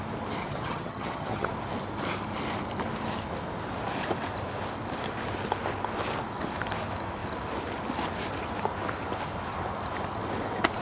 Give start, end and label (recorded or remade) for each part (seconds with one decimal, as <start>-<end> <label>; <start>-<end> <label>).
0.0-0.4 recorded; 0.4-1.5 remade; 1.5-10.8 recorded